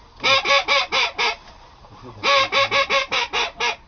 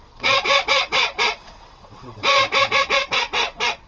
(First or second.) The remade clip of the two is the second